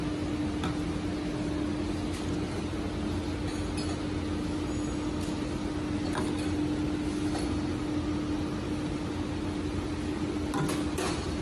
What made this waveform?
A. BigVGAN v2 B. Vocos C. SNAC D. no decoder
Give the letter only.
D